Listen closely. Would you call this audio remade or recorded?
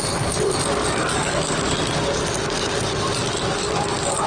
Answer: recorded